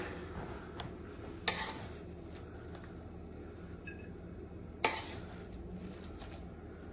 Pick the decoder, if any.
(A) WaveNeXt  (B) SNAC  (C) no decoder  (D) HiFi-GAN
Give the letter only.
C